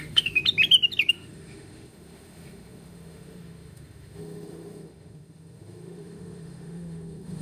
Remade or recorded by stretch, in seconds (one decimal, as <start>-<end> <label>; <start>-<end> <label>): 0.0-0.4 remade; 0.4-1.1 recorded; 1.1-7.4 remade